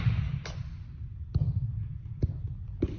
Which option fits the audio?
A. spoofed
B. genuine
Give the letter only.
B